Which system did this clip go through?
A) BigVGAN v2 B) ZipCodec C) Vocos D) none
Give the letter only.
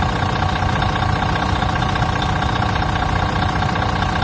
D